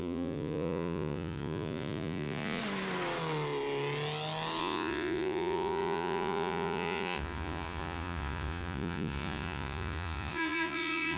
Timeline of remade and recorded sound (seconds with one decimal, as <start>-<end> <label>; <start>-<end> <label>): 0.0-2.6 remade; 2.6-4.6 recorded; 4.6-11.2 remade